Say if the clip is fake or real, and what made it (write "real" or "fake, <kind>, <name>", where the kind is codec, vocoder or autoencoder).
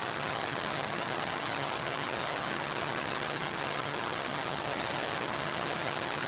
fake, vocoder, HiFi-GAN